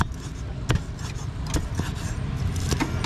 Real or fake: real